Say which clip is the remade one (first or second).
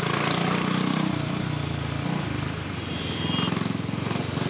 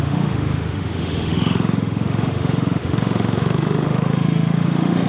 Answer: second